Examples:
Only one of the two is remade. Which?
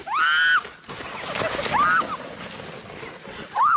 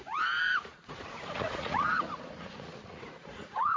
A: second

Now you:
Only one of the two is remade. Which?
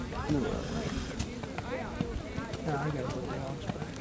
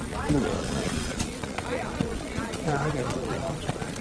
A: second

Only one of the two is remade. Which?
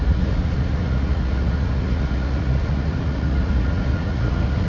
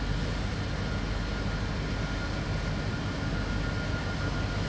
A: first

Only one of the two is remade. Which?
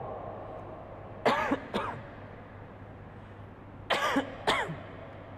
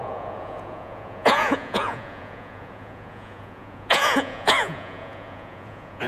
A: second